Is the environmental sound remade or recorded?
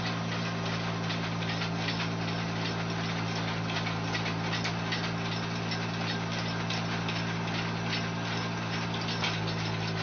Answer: recorded